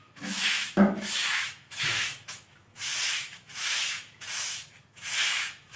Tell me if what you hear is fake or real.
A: fake